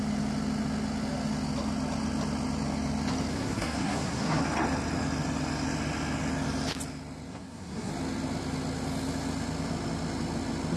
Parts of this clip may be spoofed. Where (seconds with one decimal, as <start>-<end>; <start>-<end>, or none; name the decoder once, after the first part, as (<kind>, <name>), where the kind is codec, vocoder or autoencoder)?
3.3-4.4 (codec, SNAC); 7.3-7.9